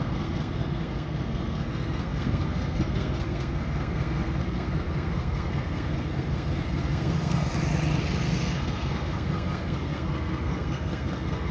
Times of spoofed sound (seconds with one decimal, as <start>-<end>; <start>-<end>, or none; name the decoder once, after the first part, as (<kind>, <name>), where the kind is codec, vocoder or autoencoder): 0.0-7.5 (codec, SNAC); 8.2-11.5